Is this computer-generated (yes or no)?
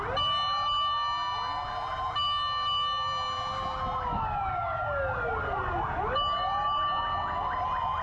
no